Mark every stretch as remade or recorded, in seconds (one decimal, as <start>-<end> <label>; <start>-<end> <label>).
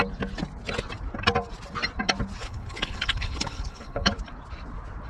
0.0-2.4 recorded; 2.4-4.1 remade; 4.1-5.1 recorded